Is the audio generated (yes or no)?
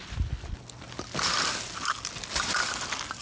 no